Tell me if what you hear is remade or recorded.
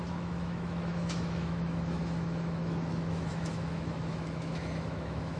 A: remade